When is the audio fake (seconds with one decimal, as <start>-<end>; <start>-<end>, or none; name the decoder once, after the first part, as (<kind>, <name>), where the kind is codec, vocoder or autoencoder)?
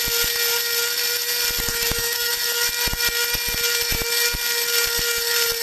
1.7-2.3 (autoencoder, DAC-VAE)